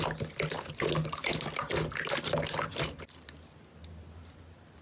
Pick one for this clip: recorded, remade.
recorded